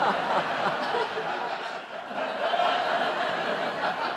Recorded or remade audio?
recorded